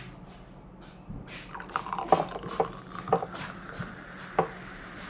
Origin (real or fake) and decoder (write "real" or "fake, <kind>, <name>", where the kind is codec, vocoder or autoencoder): real